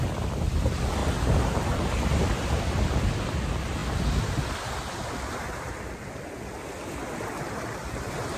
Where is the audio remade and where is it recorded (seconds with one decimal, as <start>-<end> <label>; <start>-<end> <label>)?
0.0-1.0 recorded; 1.0-1.9 remade; 1.9-8.4 recorded